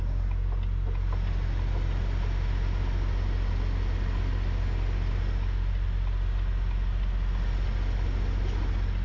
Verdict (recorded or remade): recorded